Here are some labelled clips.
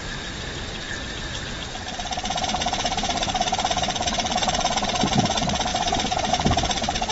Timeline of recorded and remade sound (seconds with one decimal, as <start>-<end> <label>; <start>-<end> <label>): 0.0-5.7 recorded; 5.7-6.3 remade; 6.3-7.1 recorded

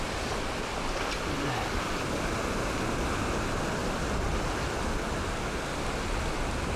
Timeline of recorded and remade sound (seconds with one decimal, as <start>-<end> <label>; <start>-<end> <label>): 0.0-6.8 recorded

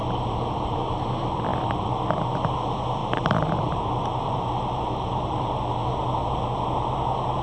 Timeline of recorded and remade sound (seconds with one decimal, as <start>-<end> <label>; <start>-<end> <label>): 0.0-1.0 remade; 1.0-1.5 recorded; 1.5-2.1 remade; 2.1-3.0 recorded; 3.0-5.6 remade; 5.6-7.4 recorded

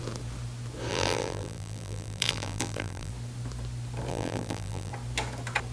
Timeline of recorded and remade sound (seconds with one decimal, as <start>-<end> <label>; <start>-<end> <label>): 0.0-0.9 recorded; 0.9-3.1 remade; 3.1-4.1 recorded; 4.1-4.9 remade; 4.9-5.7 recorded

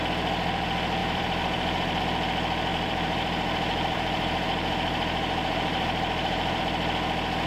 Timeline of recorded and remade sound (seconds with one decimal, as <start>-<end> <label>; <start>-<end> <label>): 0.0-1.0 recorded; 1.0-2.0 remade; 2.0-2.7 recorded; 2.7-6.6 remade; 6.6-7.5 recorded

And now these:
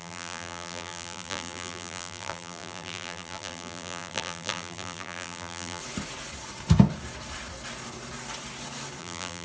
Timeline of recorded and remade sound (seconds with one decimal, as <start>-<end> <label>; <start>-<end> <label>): 0.0-5.8 remade; 5.8-9.0 recorded; 9.0-9.4 remade

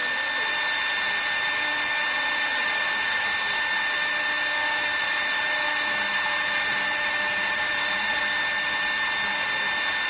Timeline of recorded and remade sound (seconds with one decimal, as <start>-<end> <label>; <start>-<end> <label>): 0.0-2.5 recorded; 2.5-3.4 remade; 3.4-4.6 recorded; 4.6-8.2 remade; 8.2-10.1 recorded